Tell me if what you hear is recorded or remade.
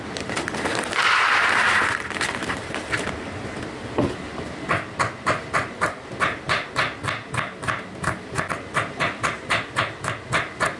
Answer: recorded